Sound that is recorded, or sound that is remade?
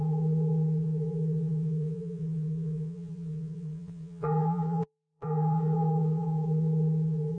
remade